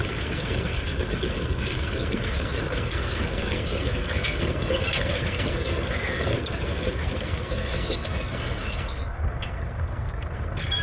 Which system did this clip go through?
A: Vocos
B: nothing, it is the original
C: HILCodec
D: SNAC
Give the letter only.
D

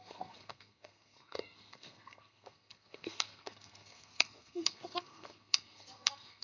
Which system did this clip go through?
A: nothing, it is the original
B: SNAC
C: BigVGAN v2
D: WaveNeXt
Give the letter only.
B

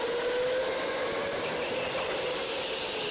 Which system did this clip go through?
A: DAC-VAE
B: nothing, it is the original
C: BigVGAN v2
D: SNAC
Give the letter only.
B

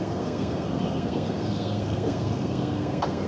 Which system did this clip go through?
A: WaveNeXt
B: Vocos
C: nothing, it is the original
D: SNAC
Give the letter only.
D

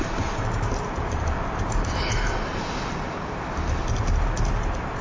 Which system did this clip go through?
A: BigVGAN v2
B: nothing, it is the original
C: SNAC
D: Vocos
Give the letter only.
B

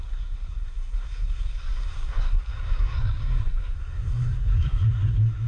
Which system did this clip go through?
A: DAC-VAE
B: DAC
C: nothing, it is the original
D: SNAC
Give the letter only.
D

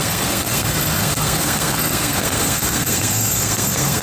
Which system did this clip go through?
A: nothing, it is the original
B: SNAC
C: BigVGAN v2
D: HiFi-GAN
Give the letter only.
B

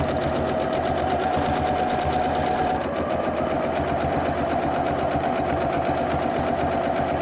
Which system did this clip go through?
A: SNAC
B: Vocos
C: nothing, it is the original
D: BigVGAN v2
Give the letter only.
C